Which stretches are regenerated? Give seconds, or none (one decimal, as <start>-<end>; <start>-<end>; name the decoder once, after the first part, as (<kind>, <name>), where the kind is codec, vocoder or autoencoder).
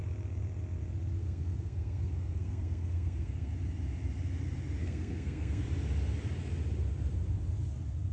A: 1.2-3.5 (codec, SNAC); 4.8-5.6